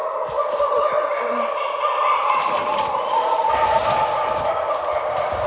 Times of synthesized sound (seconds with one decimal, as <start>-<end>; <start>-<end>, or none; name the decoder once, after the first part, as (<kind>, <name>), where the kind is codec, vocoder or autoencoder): 0.0-1.5 (vocoder, BigVGAN v2); 2.7-4.0